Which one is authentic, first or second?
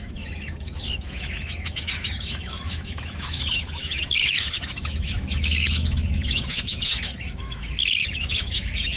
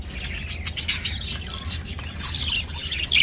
second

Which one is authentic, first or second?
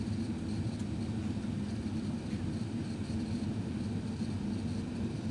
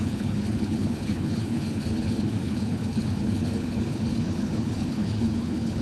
first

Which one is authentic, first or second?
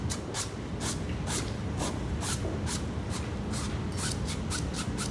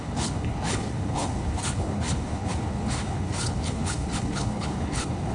first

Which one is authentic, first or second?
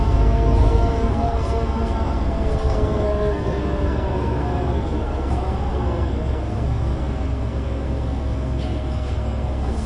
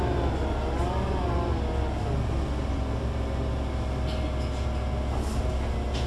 second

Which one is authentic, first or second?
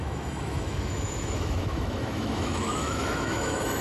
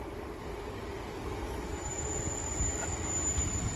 second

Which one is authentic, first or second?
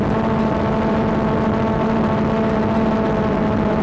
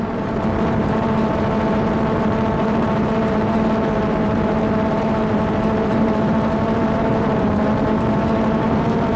first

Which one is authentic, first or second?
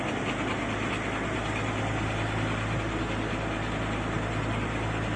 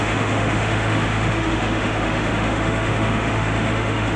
first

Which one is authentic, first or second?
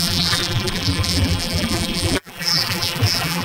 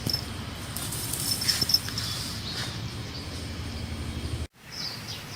second